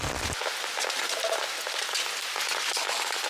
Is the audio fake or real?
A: real